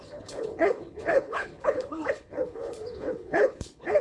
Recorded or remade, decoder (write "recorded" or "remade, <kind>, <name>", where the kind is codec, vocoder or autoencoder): remade, codec, HILCodec